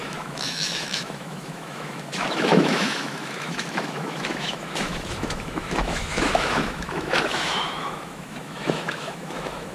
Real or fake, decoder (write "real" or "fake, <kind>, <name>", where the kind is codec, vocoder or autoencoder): fake, autoencoder, DAC-VAE